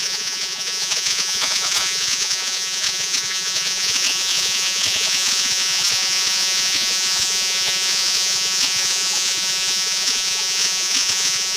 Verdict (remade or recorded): remade